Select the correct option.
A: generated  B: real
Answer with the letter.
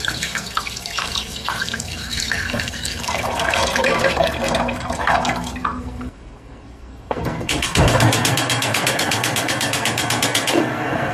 A